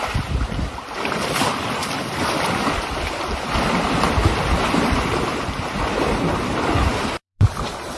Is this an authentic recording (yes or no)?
no